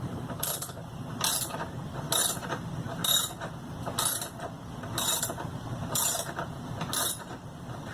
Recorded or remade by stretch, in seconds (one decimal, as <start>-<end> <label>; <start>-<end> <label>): 0.0-3.0 remade; 3.0-5.1 recorded; 5.1-7.9 remade